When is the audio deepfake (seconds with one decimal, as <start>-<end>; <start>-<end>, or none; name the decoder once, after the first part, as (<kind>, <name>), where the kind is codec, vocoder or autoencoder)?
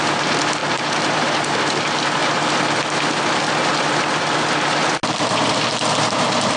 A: 0.6-1.6 (vocoder, BigVGAN v2)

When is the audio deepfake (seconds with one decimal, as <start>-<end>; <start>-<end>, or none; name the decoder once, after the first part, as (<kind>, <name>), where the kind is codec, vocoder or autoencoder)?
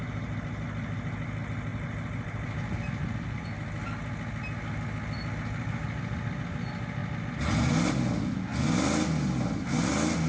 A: none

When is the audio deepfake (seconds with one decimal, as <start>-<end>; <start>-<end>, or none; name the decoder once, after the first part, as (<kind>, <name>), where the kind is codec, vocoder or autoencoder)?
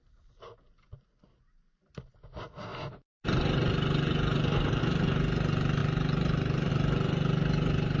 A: 5.8-6.7 (vocoder, BigVGAN v2)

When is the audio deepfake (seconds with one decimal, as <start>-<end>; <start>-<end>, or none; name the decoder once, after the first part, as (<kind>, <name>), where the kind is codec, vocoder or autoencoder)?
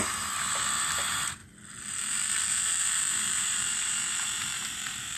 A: 0.0-1.4 (vocoder, BigVGAN v2); 1.9-5.2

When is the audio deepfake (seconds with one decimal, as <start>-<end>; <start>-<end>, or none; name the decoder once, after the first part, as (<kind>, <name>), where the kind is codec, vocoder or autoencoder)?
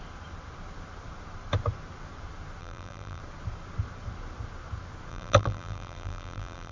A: 2.6-3.2 (vocoder, BigVGAN v2); 5.1-6.7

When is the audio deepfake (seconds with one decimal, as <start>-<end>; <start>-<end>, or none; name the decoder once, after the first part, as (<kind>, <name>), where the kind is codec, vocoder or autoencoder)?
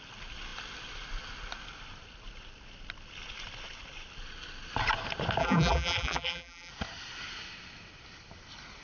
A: 5.4-6.7 (vocoder, BigVGAN v2)